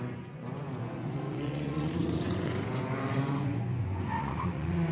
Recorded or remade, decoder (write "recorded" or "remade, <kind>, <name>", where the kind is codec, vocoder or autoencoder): remade, vocoder, Vocos